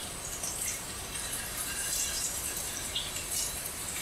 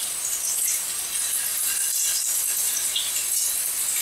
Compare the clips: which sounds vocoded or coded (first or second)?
first